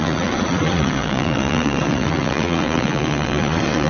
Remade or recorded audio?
remade